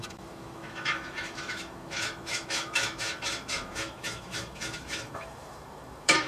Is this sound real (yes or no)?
no